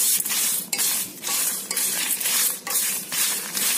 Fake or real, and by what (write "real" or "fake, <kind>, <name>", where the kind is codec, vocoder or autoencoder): fake, vocoder, BigVGAN v2